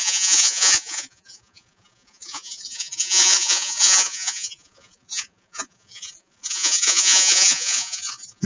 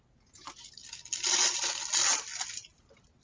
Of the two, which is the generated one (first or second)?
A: first